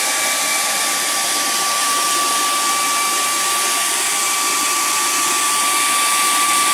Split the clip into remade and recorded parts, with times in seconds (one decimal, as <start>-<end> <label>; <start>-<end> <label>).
0.0-1.8 recorded; 1.8-2.7 remade; 2.7-6.7 recorded